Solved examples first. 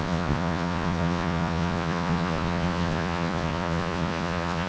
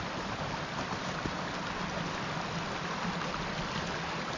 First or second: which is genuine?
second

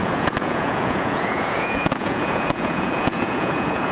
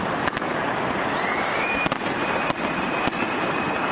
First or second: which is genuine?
second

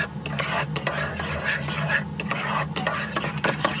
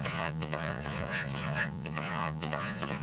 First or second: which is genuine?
first